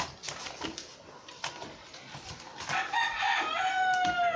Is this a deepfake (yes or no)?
no